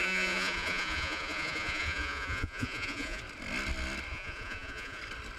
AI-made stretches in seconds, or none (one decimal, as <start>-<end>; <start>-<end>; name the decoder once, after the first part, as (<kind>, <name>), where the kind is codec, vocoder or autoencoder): 0.0-3.2 (vocoder, Vocos); 4.1-5.0